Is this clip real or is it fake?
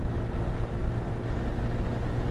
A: real